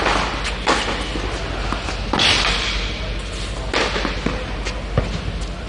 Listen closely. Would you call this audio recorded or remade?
recorded